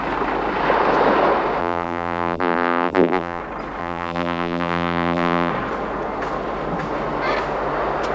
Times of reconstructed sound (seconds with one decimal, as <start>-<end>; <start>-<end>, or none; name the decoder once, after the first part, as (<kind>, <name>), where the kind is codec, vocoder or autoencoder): 1.6-3.4 (vocoder, BigVGAN v2); 3.8-5.5